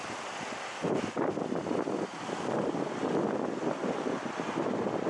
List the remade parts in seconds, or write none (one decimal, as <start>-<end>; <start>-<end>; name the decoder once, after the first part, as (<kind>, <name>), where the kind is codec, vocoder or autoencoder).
none